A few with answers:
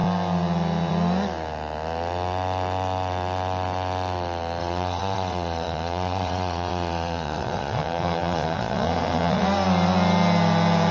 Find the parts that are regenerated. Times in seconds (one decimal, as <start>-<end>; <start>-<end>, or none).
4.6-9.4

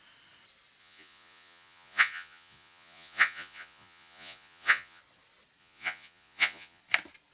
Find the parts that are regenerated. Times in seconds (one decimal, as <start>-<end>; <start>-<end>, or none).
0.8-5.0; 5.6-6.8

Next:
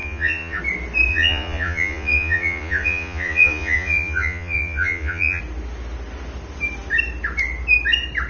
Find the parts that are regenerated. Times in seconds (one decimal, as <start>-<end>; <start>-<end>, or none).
0.0-0.6; 1.1-5.4